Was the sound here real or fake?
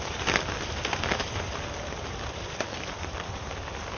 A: fake